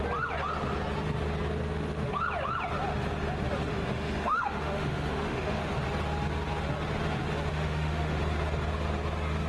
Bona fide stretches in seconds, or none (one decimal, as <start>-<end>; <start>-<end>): 0.0-3.7; 5.6-7.5; 8.2-9.5

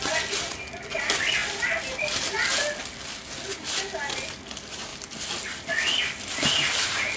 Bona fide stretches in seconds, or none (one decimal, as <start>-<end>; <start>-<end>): 0.0-4.9

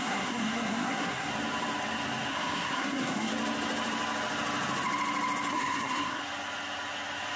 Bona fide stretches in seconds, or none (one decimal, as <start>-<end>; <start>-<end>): 1.3-2.3; 3.3-5.5; 6.2-7.4